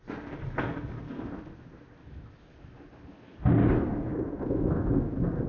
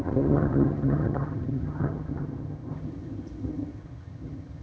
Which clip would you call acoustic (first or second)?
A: first